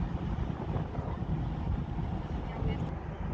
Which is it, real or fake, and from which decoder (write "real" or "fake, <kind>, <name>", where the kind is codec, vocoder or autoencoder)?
real